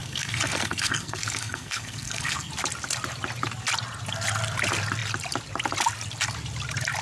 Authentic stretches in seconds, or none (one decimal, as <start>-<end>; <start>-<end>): 2.5-7.0

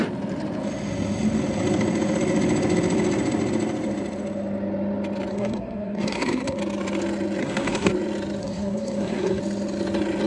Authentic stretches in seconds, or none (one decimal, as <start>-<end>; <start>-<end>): 0.0-5.3; 6.6-7.4; 7.9-8.4; 9.4-10.3

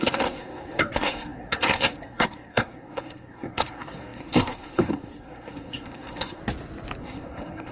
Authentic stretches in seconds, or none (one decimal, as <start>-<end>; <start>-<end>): 6.4-7.0

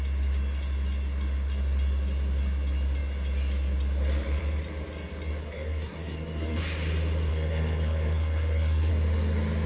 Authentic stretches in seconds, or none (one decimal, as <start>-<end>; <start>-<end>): 0.0-5.4; 6.6-7.3; 8.9-9.7

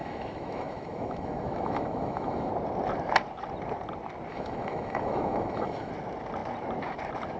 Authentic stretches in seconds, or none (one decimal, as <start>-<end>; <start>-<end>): 2.5-4.3; 5.9-7.4